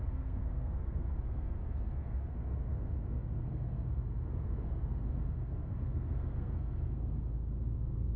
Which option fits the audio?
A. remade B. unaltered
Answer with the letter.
A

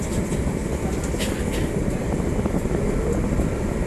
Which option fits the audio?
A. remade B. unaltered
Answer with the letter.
B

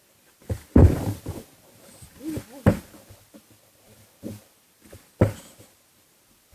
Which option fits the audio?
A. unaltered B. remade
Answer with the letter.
A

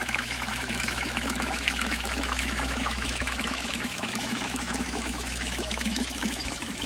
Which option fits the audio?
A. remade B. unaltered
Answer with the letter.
A